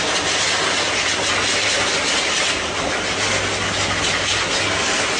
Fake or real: real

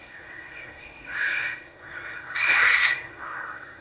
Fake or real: fake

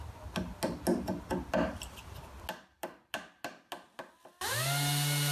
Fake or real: real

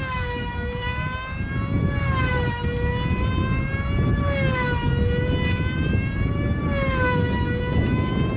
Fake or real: real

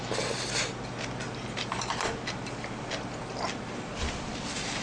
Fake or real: real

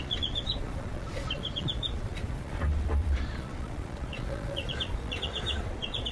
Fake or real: fake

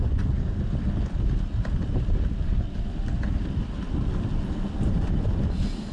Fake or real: real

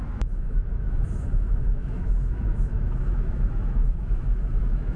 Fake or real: fake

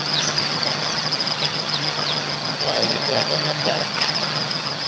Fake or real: fake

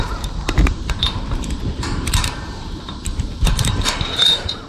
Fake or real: fake